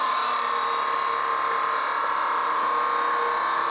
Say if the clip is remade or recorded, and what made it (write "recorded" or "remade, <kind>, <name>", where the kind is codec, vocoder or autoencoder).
recorded